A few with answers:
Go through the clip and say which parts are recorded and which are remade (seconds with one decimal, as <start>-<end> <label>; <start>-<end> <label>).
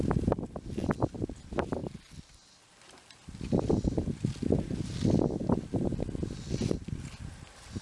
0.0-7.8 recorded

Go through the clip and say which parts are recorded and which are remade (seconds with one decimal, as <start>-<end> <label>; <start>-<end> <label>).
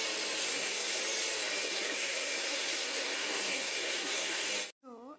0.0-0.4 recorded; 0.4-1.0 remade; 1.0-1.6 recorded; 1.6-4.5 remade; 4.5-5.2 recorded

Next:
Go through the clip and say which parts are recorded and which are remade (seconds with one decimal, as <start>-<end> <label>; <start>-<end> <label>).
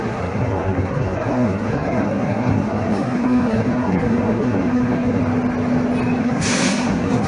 0.0-5.2 remade; 5.2-6.2 recorded; 6.2-7.3 remade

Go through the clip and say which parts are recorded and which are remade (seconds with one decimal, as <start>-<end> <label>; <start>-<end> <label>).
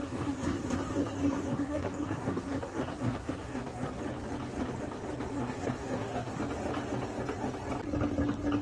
0.0-4.0 remade; 4.0-5.3 recorded; 5.3-6.4 remade; 6.4-8.6 recorded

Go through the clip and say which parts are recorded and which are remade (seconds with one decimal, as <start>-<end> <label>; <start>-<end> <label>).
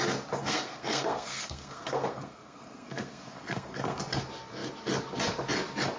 0.0-0.4 recorded; 0.4-4.0 remade; 4.0-6.0 recorded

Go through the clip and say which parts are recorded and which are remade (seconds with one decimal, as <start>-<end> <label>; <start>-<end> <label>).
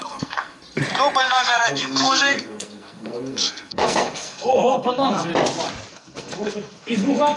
0.0-0.6 remade; 0.6-1.2 recorded; 1.2-5.3 remade; 5.3-5.9 recorded; 5.9-7.4 remade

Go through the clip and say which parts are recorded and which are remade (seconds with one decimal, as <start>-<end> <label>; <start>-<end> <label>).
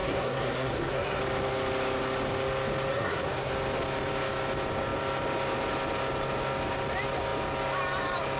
0.0-1.2 remade; 1.2-2.9 recorded; 2.9-3.5 remade; 3.5-8.4 recorded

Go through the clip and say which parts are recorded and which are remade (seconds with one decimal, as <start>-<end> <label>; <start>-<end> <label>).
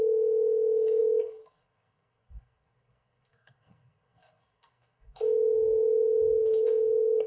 0.0-7.3 remade